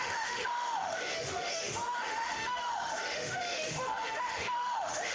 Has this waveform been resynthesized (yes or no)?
yes